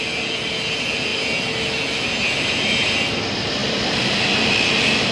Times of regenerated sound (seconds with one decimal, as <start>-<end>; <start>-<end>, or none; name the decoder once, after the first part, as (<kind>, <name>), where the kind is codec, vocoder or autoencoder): none